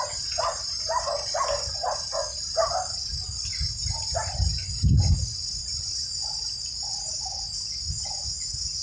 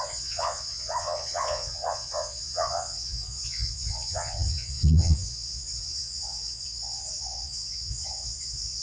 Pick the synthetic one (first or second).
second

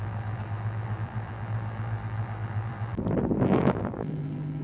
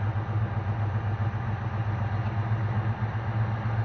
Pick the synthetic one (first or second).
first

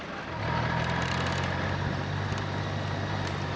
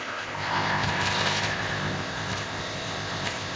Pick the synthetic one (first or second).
second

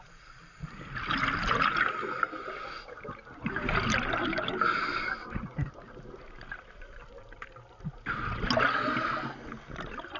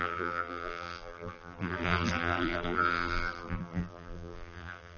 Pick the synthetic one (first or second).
second